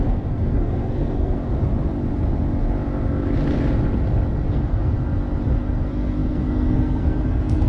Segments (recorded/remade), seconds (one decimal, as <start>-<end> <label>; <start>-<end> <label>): 0.0-1.5 remade; 1.5-4.5 recorded; 4.5-4.9 remade; 4.9-5.6 recorded; 5.6-7.7 remade